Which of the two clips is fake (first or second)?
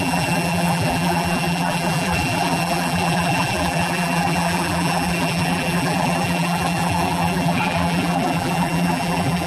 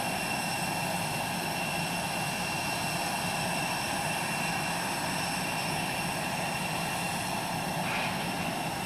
first